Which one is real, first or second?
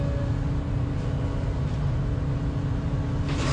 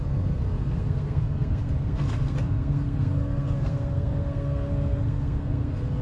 first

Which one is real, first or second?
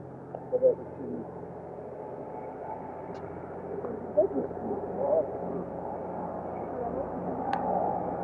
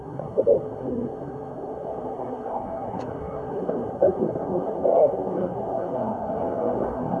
first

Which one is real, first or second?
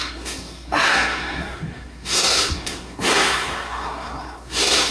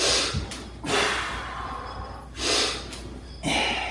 second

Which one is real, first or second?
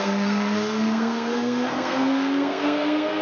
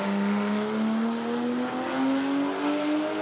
second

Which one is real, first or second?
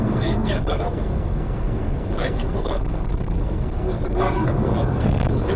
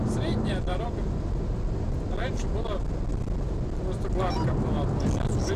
second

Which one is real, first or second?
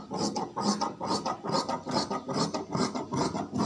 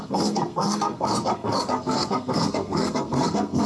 first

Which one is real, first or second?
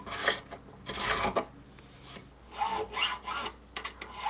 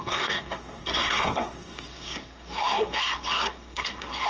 first